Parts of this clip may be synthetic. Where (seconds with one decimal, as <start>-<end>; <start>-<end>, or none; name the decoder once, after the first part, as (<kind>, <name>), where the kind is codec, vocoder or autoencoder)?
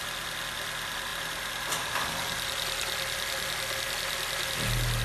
none